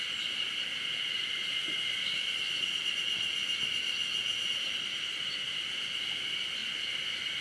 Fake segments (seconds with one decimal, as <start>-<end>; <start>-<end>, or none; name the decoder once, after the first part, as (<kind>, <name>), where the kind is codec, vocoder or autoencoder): none